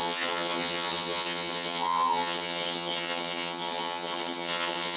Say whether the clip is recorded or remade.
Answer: remade